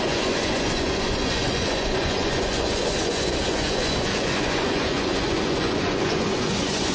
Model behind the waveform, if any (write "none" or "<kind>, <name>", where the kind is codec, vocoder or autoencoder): vocoder, Vocos